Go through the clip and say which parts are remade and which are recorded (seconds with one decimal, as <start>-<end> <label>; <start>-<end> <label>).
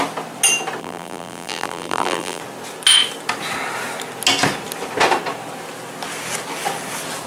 0.0-0.8 recorded; 0.8-2.4 remade; 2.4-7.3 recorded